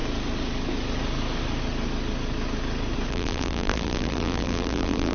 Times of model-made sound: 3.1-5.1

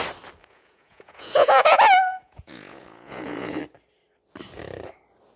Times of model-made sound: 0.4-3.6